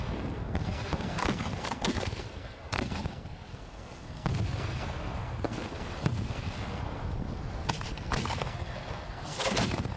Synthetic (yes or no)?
yes